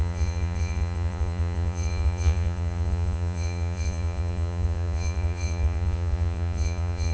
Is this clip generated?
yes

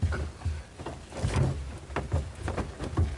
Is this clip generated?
no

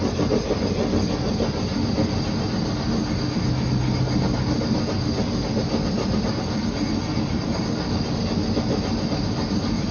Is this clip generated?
no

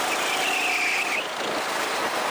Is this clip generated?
no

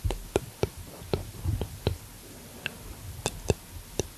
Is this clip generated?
no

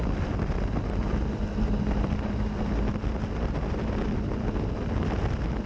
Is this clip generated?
yes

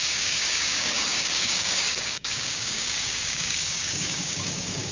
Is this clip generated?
yes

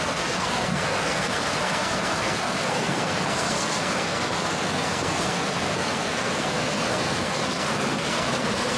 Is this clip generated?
yes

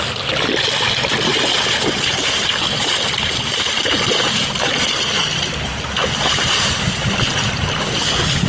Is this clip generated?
yes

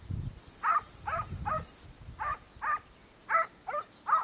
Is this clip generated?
no